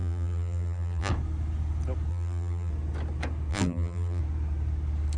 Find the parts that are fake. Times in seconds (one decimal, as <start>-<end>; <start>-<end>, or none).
0.0-1.1; 2.1-2.7; 3.5-4.2